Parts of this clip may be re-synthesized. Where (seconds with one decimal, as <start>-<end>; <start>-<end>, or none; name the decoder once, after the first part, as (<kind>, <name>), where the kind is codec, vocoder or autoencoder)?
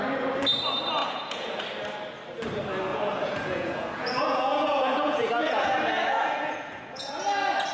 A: 1.0-1.6 (vocoder, Vocos); 2.9-7.1